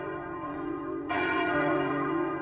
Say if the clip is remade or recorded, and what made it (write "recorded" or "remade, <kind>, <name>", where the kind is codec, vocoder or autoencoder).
remade, vocoder, Vocos